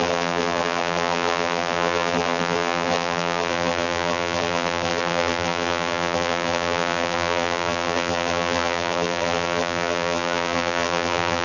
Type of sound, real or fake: fake